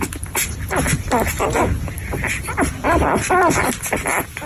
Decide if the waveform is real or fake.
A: real